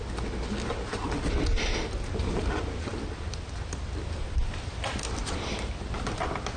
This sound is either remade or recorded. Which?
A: recorded